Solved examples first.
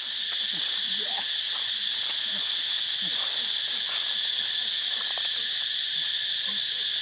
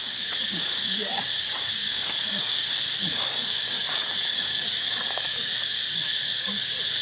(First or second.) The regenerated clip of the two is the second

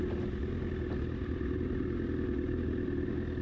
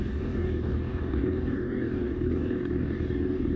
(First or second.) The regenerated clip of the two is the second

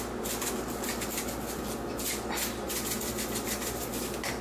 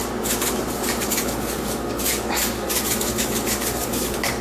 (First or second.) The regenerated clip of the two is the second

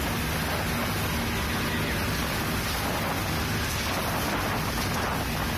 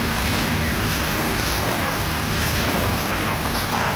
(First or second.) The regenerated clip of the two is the second